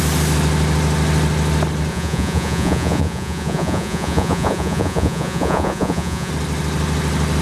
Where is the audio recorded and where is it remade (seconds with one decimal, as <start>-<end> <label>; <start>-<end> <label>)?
0.0-1.9 recorded; 1.9-6.3 remade; 6.3-7.4 recorded

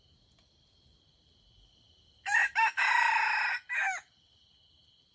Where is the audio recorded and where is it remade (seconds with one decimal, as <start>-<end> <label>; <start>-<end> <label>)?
0.0-5.1 recorded

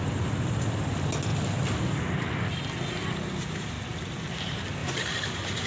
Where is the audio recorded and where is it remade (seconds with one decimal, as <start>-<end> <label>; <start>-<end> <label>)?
0.0-4.8 recorded; 4.8-5.7 remade

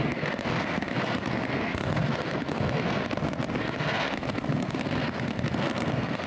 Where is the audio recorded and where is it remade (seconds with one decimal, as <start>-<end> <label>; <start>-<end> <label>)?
0.0-3.0 remade; 3.0-3.6 recorded; 3.6-6.3 remade

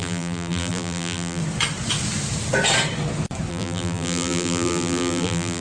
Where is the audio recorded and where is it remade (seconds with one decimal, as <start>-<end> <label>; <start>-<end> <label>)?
0.0-1.4 remade; 1.4-3.5 recorded; 3.5-5.6 remade